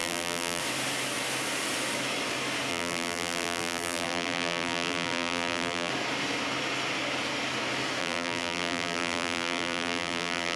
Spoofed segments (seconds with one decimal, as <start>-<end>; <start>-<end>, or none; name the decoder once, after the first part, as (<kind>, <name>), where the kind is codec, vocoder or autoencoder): 0.0-0.6 (vocoder, BigVGAN v2); 2.7-5.9; 8.0-10.6